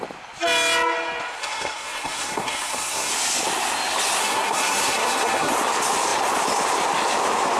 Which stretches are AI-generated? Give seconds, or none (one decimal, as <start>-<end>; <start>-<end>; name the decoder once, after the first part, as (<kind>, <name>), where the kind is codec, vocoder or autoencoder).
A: 1.4-3.1 (codec, SNAC); 4.2-5.5